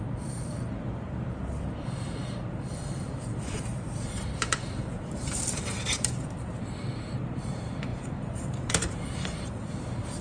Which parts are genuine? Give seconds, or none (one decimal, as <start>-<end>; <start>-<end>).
none

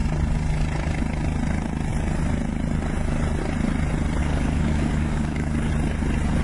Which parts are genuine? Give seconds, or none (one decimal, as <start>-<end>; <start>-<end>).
0.0-4.2; 5.7-6.4

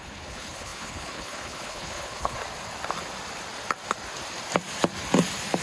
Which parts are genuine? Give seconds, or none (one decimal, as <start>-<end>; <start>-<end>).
2.4-5.6